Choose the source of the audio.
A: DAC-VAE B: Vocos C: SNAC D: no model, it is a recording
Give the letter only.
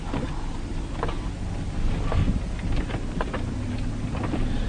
D